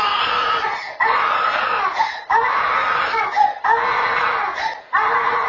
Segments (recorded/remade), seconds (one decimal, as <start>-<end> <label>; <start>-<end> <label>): 0.0-5.5 recorded